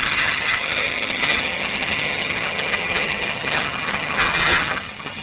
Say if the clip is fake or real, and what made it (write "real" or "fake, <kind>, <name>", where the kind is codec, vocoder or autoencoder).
fake, vocoder, HiFi-GAN